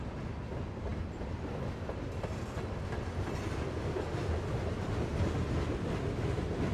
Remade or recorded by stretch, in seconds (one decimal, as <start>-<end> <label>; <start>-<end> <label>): 0.0-6.7 recorded